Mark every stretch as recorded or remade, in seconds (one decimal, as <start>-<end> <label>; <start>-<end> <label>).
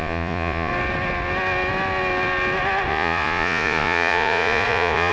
0.0-0.7 remade; 0.7-2.9 recorded; 2.9-5.1 remade